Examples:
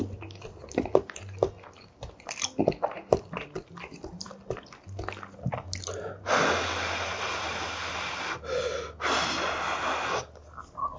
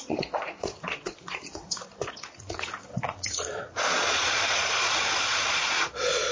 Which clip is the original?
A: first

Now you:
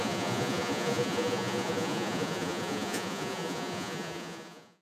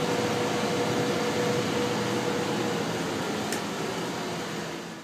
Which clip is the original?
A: second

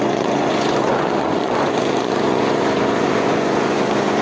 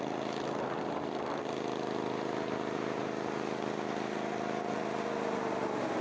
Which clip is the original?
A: second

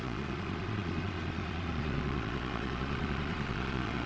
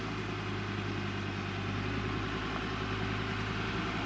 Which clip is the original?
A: second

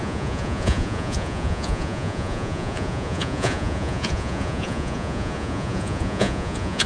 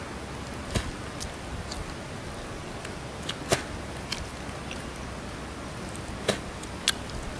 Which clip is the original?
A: second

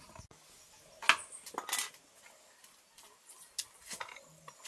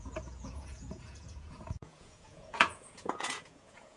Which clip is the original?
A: first